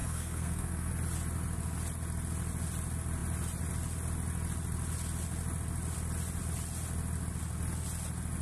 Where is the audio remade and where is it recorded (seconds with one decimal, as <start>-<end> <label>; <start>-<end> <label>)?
0.0-0.9 remade; 0.9-8.4 recorded